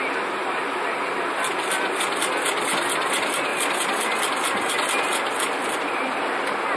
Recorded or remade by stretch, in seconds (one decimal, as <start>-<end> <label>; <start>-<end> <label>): 0.0-0.4 recorded; 0.4-2.2 remade; 2.2-3.5 recorded; 3.5-5.7 remade; 5.7-6.8 recorded